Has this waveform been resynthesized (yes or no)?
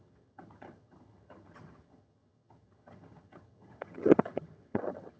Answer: yes